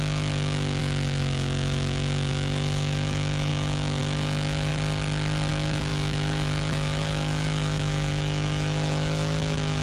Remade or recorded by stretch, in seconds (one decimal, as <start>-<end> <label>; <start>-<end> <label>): 0.0-4.7 remade; 4.7-5.5 recorded; 5.5-9.8 remade